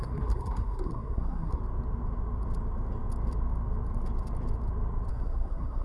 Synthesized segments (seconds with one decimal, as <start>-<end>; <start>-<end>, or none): 0.0-1.6; 5.1-5.8